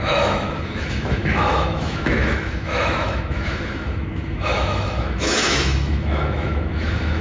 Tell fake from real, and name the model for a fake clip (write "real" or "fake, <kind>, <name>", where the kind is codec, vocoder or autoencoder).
fake, autoencoder, DAC-VAE